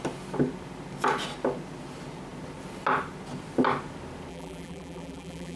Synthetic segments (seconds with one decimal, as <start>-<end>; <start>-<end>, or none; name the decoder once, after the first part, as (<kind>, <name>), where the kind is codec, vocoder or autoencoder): 4.3-5.6 (vocoder, BigVGAN v2)